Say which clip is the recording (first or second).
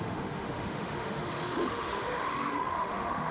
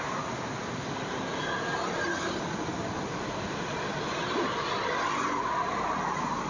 second